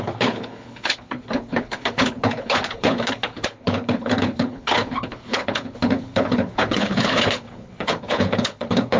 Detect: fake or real fake